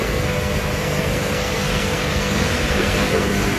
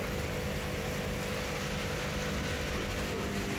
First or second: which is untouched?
second